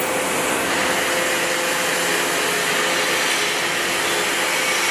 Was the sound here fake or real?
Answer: real